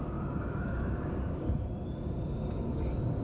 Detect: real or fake fake